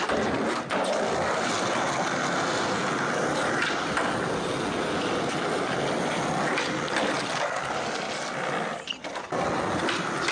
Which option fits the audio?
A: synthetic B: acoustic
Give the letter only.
B